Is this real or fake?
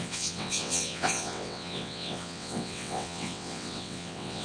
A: fake